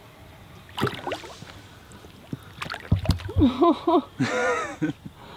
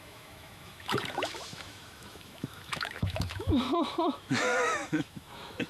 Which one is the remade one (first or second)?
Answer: second